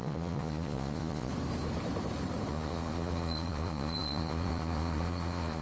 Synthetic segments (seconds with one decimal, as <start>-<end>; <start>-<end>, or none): 0.0-1.3; 2.5-5.6